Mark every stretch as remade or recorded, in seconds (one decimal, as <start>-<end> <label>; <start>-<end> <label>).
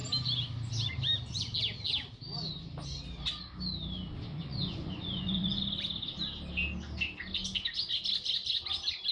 0.0-4.3 recorded; 4.3-5.6 remade; 5.6-9.1 recorded